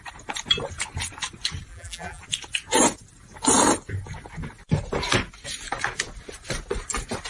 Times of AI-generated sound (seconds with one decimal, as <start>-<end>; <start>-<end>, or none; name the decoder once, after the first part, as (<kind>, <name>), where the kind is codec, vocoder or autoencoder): 1.7-2.2 (vocoder, BigVGAN v2)